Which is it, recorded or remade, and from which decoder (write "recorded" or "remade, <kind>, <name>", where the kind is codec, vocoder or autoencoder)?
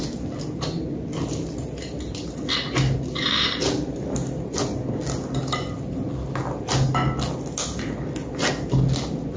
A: recorded